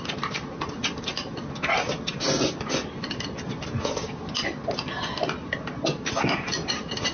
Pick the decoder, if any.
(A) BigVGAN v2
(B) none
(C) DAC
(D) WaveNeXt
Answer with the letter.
B